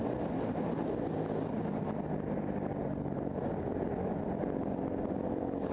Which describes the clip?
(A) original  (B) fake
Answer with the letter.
A